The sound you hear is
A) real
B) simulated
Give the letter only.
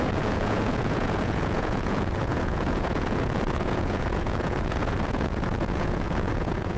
B